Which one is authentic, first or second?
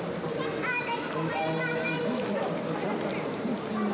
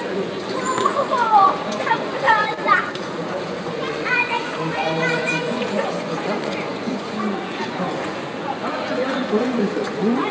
first